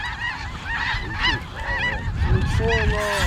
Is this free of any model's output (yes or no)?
yes